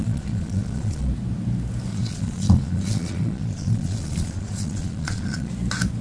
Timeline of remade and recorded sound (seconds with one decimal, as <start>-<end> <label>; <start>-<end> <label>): 0.0-1.1 remade; 1.1-1.9 recorded; 1.9-5.5 remade; 5.5-6.0 recorded